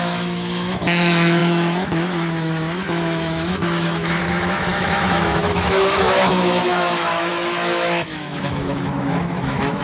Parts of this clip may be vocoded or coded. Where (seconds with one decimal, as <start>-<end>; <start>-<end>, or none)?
0.0-9.8